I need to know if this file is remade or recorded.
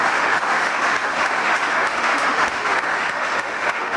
remade